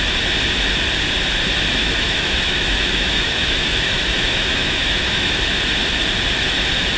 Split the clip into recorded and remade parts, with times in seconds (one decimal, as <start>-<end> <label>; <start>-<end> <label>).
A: 0.0-1.8 recorded; 1.8-5.4 remade; 5.4-7.0 recorded